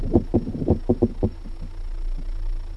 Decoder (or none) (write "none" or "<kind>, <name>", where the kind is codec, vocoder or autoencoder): none